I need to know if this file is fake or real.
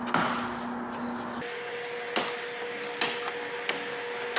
real